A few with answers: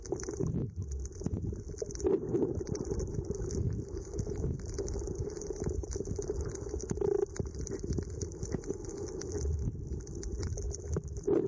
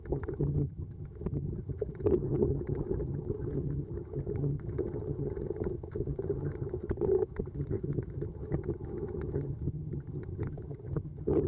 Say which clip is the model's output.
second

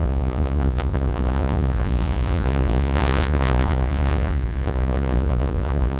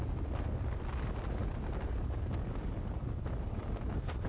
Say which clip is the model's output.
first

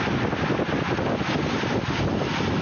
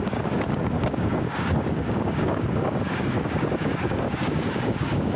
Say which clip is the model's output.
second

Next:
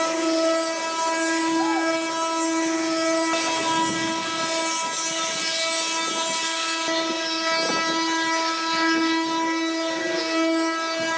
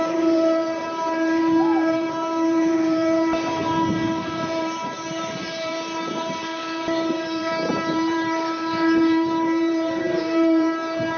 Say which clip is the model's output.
second